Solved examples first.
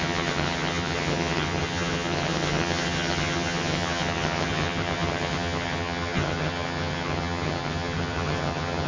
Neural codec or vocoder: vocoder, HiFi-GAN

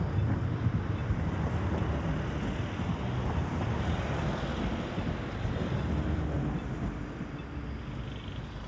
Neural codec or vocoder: none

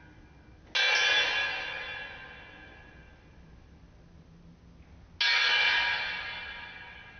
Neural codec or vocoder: none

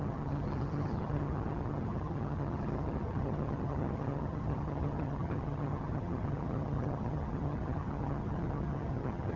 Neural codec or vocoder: vocoder, HiFi-GAN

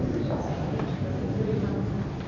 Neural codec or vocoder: none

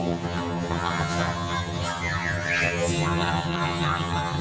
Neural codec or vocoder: vocoder, HiFi-GAN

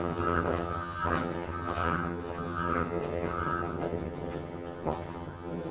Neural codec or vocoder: vocoder, HiFi-GAN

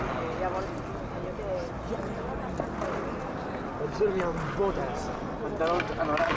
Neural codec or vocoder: none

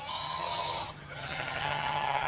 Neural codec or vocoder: vocoder, HiFi-GAN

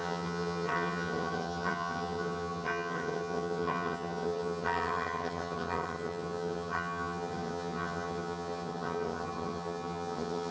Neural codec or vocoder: vocoder, HiFi-GAN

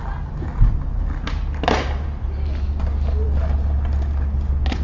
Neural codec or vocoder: none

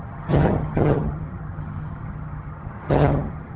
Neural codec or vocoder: vocoder, HiFi-GAN